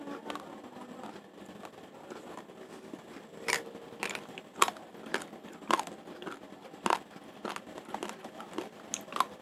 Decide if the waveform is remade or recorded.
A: recorded